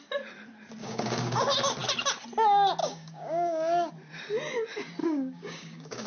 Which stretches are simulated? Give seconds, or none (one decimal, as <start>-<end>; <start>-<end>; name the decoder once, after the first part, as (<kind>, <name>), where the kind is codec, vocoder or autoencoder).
0.8-1.4 (codec, DAC); 2.8-3.9; 5.0-6.1